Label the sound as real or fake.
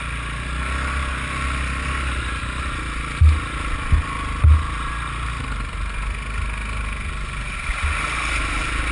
real